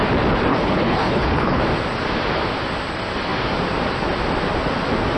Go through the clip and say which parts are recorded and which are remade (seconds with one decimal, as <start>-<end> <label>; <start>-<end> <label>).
0.0-0.5 recorded; 0.5-1.6 remade; 1.6-5.2 recorded